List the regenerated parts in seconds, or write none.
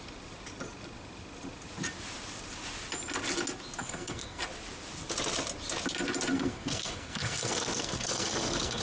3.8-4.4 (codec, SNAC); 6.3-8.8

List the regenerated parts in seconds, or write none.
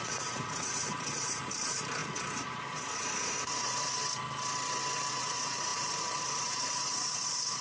0.0-4.0 (vocoder, Vocos); 5.1-7.6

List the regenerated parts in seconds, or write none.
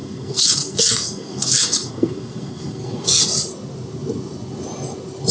0.0-3.2 (codec, SNAC)